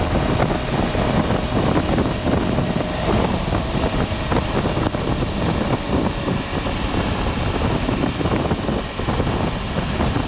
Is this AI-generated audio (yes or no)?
no